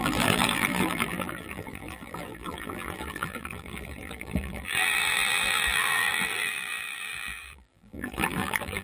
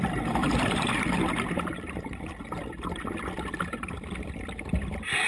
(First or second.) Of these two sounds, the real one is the second